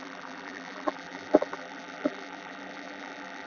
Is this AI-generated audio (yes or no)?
yes